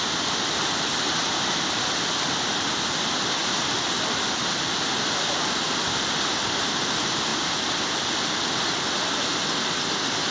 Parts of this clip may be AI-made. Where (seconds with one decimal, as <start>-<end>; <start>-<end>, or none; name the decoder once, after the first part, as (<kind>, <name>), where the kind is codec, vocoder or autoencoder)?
none